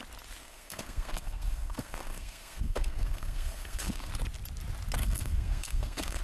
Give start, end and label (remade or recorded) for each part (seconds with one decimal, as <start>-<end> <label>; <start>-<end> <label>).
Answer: 0.0-0.4 recorded; 0.4-4.1 remade; 4.1-5.0 recorded; 5.0-6.2 remade